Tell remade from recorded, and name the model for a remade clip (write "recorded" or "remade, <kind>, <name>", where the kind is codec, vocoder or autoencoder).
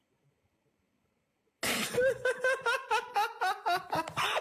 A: recorded